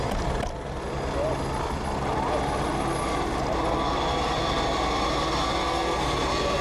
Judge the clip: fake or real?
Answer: real